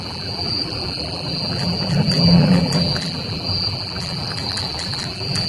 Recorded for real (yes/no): no